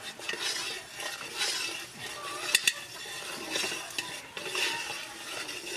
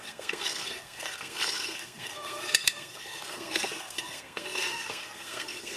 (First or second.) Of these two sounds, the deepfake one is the second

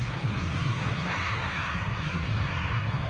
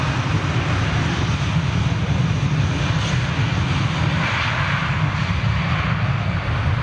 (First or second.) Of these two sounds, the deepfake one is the first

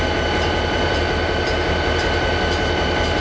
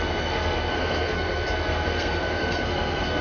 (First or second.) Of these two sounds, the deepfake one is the second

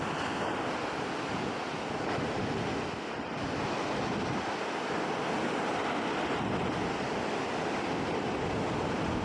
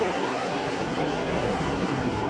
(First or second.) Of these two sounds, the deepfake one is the second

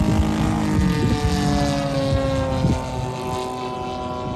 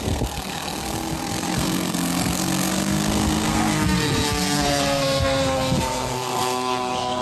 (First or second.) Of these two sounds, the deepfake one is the second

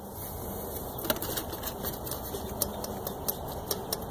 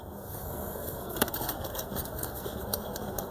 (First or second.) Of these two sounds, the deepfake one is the second